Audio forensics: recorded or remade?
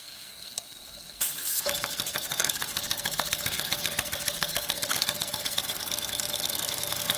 remade